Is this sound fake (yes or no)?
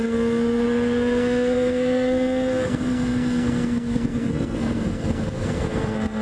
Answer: yes